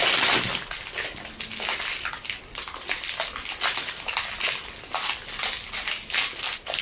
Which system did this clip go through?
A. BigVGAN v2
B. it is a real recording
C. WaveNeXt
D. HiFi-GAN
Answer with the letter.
B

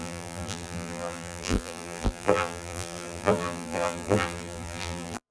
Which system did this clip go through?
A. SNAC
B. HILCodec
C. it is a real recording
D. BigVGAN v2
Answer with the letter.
D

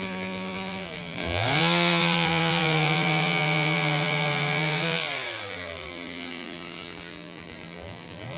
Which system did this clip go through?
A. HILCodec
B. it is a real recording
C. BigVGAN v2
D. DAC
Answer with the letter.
C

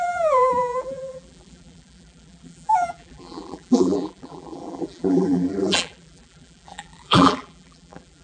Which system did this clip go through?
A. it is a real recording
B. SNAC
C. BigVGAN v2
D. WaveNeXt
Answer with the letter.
C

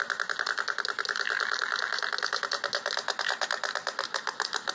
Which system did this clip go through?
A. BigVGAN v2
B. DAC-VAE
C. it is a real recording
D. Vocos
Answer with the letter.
C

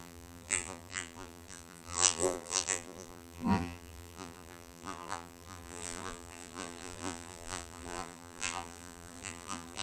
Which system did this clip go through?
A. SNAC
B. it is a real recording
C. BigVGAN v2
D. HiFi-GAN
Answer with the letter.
C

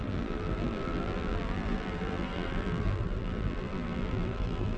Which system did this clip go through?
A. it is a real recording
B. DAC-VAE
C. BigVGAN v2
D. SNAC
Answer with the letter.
C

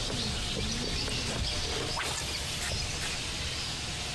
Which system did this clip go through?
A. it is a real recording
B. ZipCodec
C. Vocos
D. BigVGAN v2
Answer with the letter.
A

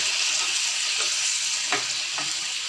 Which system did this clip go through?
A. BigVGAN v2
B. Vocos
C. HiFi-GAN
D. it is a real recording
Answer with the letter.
D